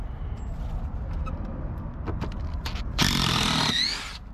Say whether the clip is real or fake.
real